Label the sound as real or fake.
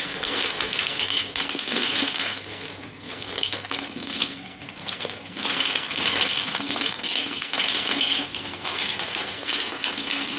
fake